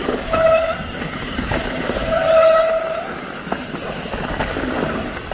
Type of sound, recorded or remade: recorded